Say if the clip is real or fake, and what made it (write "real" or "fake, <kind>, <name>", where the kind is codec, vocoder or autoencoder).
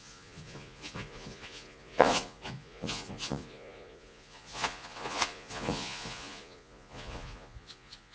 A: fake, vocoder, Vocos